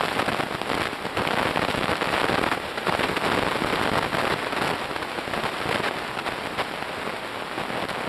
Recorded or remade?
recorded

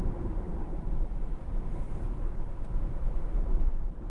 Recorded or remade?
remade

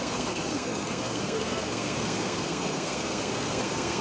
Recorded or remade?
remade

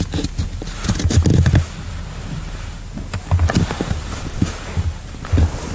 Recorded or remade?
recorded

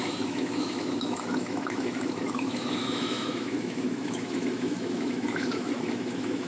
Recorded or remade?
remade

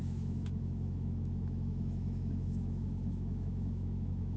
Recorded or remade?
remade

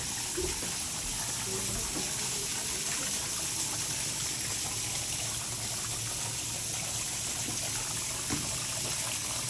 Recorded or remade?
recorded